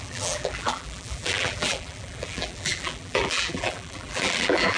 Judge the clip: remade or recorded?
remade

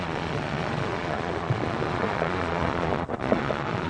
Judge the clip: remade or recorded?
remade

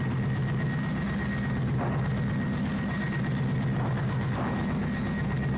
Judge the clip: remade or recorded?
recorded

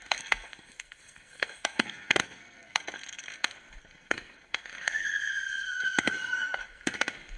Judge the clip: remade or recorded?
remade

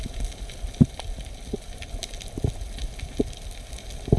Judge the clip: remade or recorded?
recorded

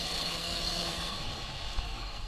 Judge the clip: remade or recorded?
remade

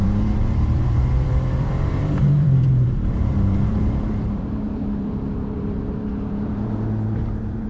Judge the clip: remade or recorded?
remade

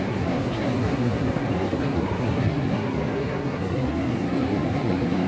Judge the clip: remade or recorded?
remade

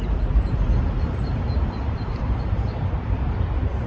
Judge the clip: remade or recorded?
remade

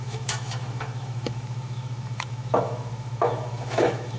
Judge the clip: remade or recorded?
remade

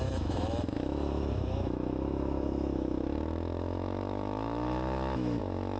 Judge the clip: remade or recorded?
remade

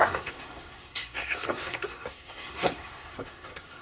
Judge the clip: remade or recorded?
remade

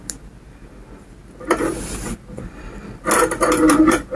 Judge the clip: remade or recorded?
recorded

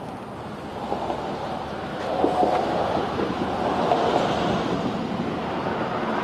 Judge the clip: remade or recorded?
recorded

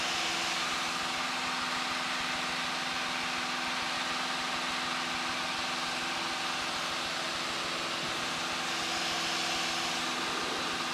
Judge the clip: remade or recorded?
recorded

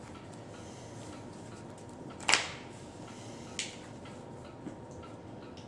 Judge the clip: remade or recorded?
recorded